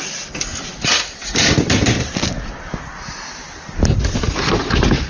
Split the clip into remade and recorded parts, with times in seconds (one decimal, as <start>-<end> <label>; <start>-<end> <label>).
0.0-5.1 recorded